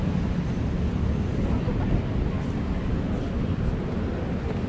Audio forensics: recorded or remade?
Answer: recorded